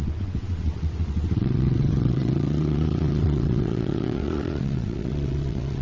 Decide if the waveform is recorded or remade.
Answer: remade